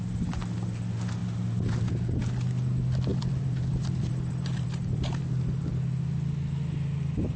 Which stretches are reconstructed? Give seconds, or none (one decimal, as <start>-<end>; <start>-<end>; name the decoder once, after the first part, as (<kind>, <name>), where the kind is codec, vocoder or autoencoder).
3.1-5.7 (vocoder, BigVGAN v2)